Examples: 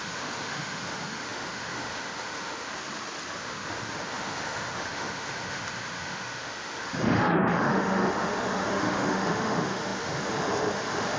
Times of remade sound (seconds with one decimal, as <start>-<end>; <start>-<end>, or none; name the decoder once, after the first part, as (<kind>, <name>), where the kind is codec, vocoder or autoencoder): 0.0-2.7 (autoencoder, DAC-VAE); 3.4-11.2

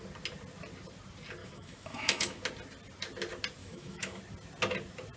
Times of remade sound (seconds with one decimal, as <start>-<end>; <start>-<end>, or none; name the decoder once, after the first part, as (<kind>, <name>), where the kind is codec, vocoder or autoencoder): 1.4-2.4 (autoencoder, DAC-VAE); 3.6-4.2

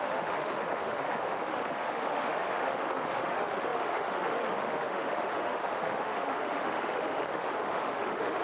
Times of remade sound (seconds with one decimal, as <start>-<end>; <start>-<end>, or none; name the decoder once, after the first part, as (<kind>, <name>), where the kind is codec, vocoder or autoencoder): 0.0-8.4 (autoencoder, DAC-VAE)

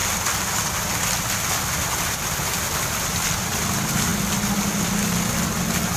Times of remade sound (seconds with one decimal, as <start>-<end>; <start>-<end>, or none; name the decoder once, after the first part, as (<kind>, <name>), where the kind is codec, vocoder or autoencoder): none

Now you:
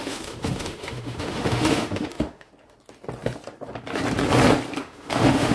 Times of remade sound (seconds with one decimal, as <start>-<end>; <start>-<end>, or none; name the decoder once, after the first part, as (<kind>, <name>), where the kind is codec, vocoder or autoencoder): 0.0-2.5 (autoencoder, DAC-VAE); 4.8-5.5

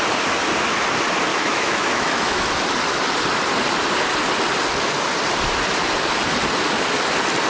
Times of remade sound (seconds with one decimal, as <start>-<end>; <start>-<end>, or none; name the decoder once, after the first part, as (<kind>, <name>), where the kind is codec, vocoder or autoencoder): 1.3-2.5 (autoencoder, DAC-VAE)

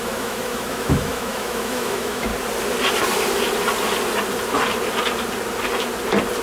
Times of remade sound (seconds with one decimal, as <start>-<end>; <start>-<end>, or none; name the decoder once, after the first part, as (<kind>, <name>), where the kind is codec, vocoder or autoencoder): 0.0-2.3 (autoencoder, DAC-VAE)